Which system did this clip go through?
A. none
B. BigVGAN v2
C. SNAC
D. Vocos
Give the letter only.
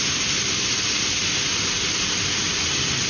A